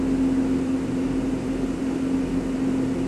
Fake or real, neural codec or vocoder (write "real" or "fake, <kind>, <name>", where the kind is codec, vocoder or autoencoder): real